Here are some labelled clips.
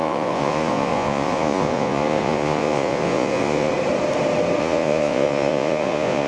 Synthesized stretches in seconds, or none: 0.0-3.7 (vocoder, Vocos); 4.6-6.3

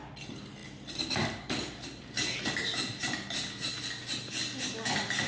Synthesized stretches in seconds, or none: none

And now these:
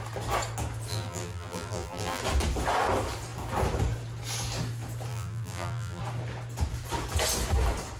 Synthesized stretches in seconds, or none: 0.9-2.2 (vocoder, BigVGAN v2); 5.1-6.0

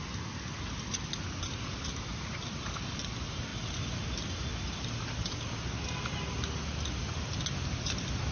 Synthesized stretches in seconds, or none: none

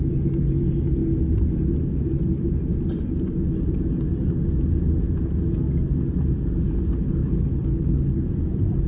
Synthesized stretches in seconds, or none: 7.2-8.3 (codec, HILCodec)